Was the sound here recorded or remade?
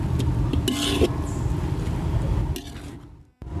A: recorded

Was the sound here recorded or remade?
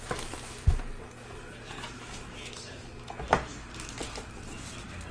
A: recorded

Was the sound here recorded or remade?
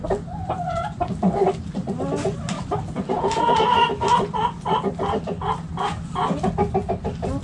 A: recorded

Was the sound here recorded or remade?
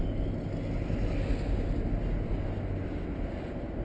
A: recorded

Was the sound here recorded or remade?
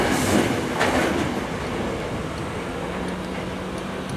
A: recorded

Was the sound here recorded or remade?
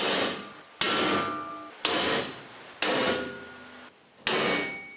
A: recorded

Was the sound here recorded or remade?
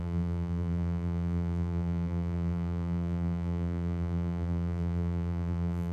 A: remade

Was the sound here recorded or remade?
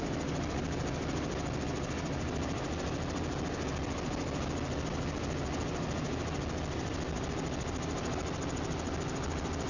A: recorded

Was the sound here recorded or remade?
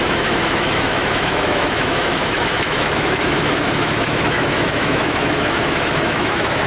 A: remade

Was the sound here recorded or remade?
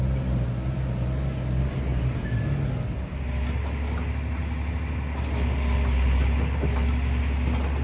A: recorded